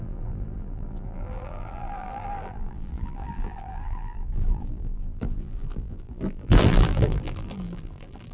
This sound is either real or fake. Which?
fake